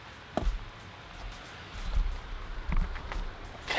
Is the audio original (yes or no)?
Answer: yes